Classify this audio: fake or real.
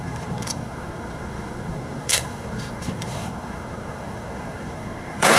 fake